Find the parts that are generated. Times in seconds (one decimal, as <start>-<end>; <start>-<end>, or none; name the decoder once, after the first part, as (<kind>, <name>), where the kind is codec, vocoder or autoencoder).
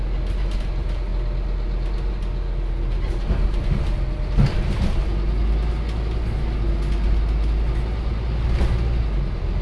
none